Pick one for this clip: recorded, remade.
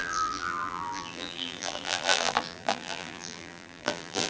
remade